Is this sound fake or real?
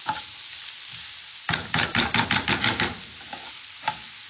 real